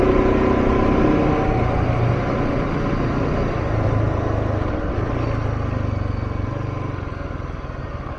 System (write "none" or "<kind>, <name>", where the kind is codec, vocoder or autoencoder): none